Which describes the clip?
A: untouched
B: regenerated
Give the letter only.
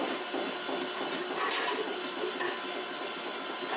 A